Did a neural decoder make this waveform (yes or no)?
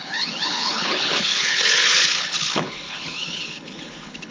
yes